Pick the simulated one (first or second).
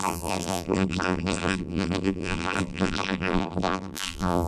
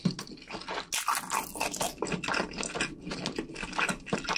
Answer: first